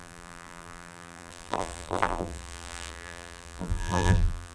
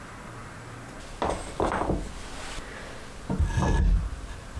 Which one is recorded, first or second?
second